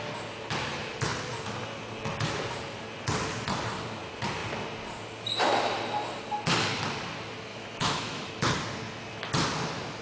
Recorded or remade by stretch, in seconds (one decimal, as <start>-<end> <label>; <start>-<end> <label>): 0.0-7.5 recorded; 7.5-8.3 remade; 8.3-10.0 recorded